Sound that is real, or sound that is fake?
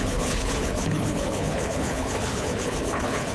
fake